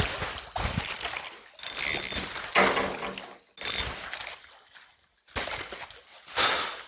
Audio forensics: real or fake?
real